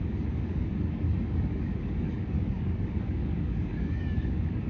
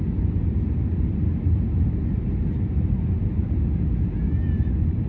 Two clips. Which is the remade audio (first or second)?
first